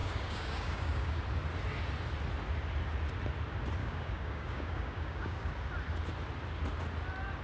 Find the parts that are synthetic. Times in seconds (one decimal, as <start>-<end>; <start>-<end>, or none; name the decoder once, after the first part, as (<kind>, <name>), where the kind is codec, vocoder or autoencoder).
0.0-1.2 (codec, DAC); 3.8-5.5